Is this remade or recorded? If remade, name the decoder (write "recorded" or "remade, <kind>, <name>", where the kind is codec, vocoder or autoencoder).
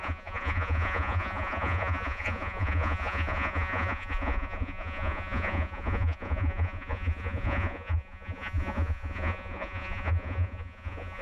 remade, vocoder, Vocos